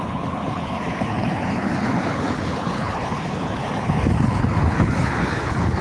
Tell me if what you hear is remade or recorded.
remade